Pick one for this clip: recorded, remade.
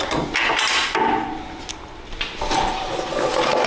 recorded